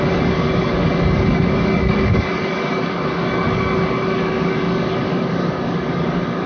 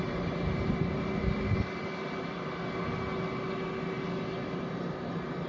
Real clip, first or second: second